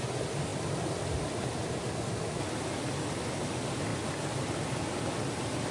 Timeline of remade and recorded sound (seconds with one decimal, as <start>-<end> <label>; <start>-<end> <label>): 0.0-5.7 recorded